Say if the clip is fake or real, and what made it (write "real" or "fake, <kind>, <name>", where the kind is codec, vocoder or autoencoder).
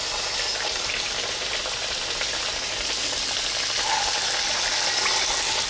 real